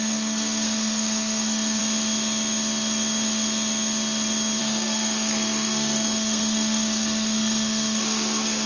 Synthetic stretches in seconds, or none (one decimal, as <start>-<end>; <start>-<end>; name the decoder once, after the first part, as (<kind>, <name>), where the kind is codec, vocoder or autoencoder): 0.0-1.8 (codec, SNAC); 4.6-8.7